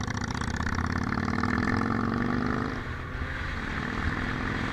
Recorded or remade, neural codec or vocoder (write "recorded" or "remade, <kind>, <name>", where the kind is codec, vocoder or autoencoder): remade, vocoder, BigVGAN v2